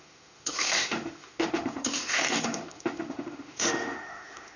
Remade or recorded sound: remade